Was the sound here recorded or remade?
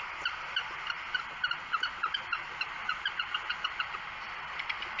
recorded